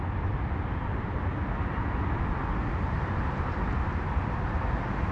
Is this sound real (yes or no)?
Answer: yes